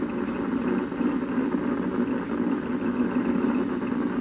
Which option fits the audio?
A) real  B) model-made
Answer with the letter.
A